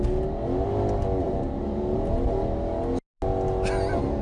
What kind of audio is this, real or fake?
real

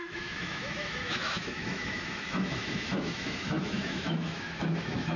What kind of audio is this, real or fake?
fake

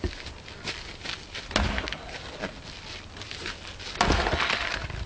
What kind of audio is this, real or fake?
real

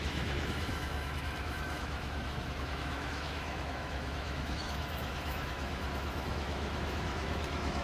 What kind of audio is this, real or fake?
fake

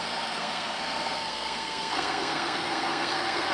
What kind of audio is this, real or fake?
fake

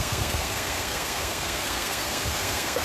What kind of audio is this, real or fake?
fake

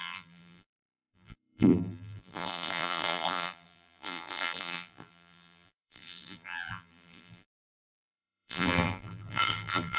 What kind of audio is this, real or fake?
fake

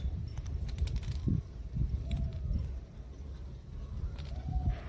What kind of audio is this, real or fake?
fake